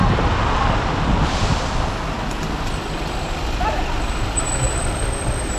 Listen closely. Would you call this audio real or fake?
real